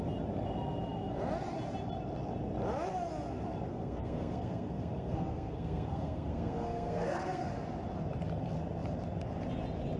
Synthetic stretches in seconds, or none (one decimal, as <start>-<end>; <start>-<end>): 3.7-7.5